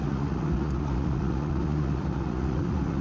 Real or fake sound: fake